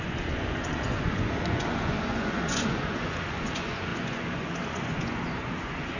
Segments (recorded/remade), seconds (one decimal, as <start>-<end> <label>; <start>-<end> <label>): 0.0-6.0 remade